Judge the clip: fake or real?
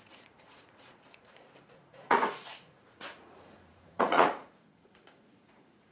fake